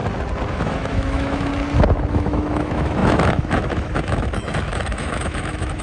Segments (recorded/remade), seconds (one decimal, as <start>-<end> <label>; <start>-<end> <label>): 0.0-0.5 recorded; 0.5-1.5 remade; 1.5-2.1 recorded; 2.1-5.8 remade